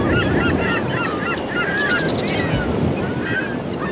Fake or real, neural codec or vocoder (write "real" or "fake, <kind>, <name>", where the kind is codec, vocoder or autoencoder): real